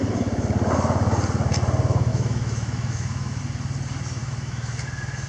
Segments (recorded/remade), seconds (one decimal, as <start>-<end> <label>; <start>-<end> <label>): 0.0-2.1 recorded; 2.1-3.4 remade; 3.4-4.2 recorded; 4.2-4.8 remade; 4.8-5.3 recorded